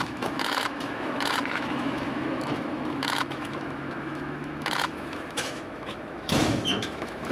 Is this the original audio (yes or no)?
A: no